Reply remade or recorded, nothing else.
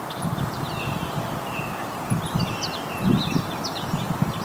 recorded